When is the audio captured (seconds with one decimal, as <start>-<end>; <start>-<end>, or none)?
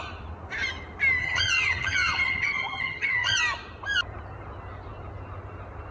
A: 0.0-1.2; 3.4-5.9